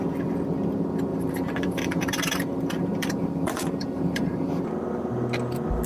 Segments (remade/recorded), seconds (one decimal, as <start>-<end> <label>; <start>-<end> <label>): 0.0-1.1 recorded; 1.1-4.6 remade; 4.6-5.9 recorded